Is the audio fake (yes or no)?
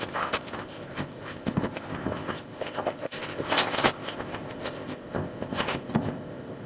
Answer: yes